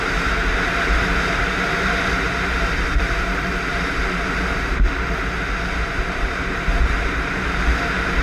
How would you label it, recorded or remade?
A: remade